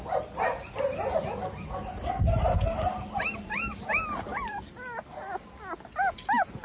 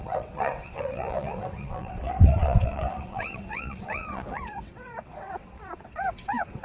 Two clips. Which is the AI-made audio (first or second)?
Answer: second